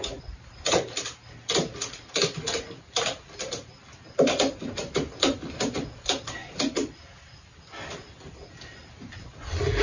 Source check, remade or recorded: recorded